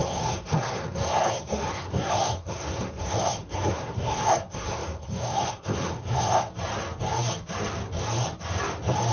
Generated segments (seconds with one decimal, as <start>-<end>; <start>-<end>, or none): 0.0-6.5